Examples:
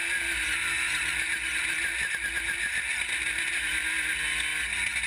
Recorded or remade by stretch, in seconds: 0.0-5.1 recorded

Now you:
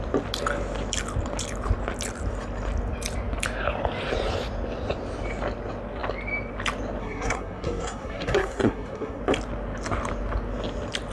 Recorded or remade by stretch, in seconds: 0.0-7.0 recorded; 7.0-9.2 remade; 9.2-11.1 recorded

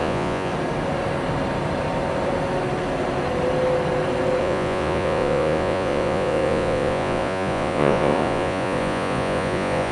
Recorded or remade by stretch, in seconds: 0.0-0.5 remade; 0.5-4.4 recorded; 4.4-9.9 remade